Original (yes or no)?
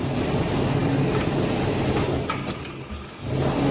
yes